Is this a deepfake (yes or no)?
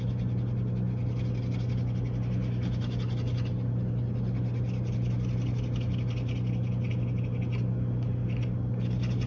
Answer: no